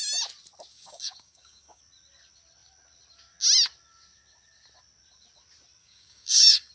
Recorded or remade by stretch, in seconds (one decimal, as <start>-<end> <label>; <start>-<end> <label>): 0.0-0.7 recorded; 0.7-1.8 remade; 1.8-5.8 recorded; 5.8-6.7 remade